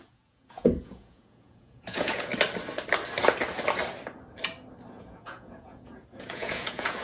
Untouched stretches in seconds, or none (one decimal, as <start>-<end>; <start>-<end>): 2.3-4.9